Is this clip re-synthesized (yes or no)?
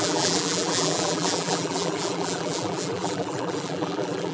yes